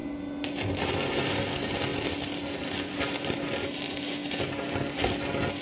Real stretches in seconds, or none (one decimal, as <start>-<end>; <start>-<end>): 0.0-5.6